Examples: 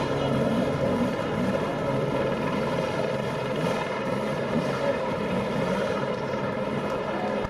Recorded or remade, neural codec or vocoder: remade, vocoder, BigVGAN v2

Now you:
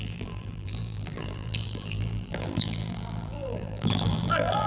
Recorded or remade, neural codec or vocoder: remade, vocoder, BigVGAN v2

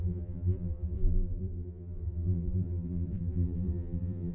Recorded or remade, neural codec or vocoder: remade, vocoder, BigVGAN v2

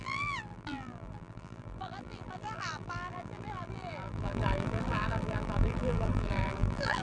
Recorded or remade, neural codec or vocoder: remade, vocoder, BigVGAN v2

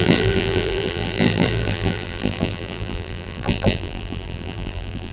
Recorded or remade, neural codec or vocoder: remade, vocoder, BigVGAN v2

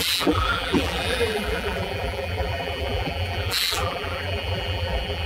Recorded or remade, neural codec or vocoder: remade, vocoder, BigVGAN v2